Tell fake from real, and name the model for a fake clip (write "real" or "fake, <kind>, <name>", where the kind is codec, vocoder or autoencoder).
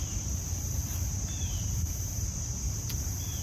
fake, vocoder, BigVGAN v2